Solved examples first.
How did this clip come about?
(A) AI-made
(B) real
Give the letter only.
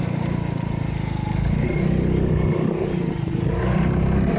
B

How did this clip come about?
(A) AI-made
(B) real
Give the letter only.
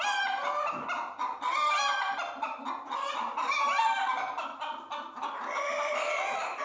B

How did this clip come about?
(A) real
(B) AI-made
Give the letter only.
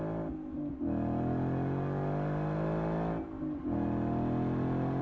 A